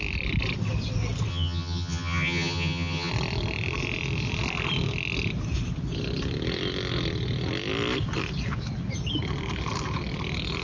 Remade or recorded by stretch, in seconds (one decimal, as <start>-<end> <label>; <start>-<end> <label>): 0.0-1.3 recorded; 1.3-3.1 remade; 3.1-10.6 recorded